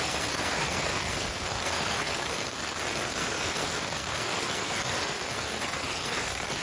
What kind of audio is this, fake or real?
fake